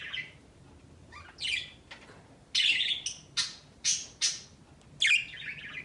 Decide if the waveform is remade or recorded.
recorded